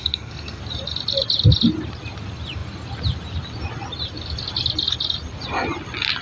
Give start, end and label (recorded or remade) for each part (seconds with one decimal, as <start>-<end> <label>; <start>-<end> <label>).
0.0-0.6 remade; 0.6-6.2 recorded